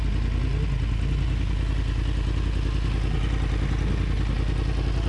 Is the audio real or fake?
real